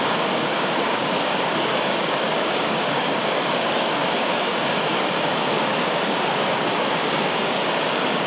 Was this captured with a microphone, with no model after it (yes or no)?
no